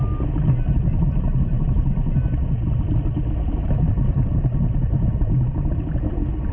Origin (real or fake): real